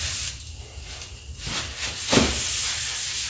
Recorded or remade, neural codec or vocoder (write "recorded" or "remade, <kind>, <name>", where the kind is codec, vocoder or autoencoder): recorded